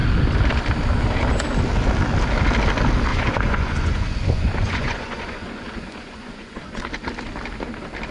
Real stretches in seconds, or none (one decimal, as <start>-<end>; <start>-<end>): 0.0-3.1; 6.8-8.1